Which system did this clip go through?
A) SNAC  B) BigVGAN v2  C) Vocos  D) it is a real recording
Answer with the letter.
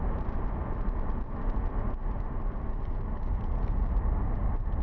D